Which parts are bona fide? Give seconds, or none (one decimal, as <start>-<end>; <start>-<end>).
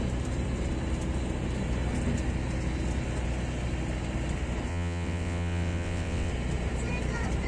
0.0-4.7; 6.3-7.5